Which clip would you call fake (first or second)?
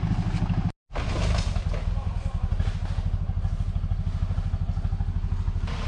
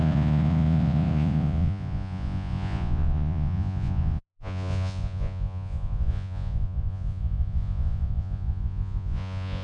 second